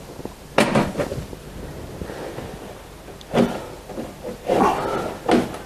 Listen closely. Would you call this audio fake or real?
real